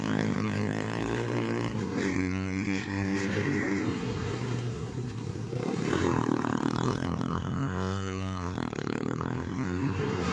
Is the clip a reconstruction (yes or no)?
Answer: yes